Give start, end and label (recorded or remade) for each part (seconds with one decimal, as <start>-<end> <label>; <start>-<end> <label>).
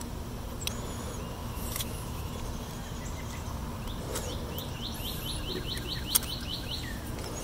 0.0-1.4 recorded; 1.4-2.3 remade; 2.3-6.5 recorded; 6.5-7.0 remade; 7.0-7.4 recorded